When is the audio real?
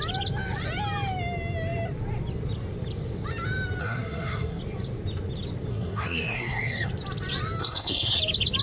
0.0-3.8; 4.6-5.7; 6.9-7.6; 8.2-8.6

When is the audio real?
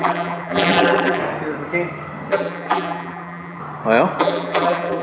1.2-2.3; 3.6-4.2